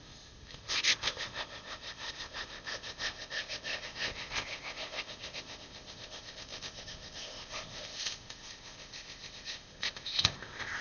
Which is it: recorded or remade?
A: remade